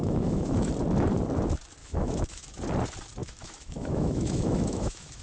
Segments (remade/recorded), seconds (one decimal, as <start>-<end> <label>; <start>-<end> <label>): 0.0-0.7 remade; 0.7-1.8 recorded; 1.8-2.6 remade; 2.6-3.2 recorded; 3.2-5.2 remade